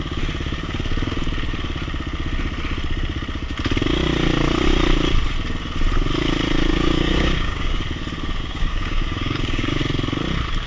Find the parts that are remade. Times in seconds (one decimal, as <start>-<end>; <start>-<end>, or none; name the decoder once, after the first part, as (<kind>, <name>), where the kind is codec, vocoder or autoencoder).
6.7-7.8 (codec, DAC); 8.4-9.8